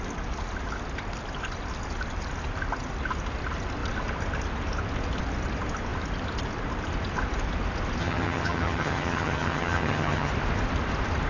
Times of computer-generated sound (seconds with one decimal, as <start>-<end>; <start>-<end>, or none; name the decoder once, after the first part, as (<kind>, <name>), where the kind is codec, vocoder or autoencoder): 8.0-10.3 (vocoder, HiFi-GAN)